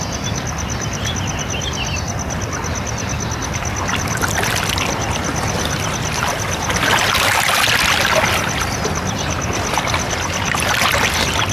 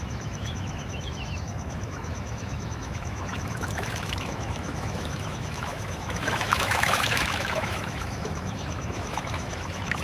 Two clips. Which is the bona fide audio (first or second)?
first